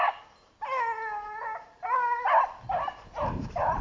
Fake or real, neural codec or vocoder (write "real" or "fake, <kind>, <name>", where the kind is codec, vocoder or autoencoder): real